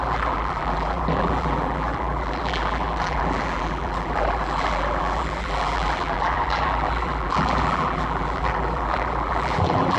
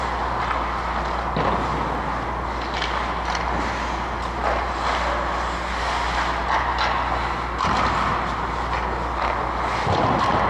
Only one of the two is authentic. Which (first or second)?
second